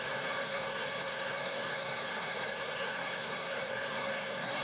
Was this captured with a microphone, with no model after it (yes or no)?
no